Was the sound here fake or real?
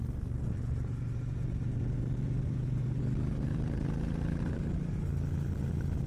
real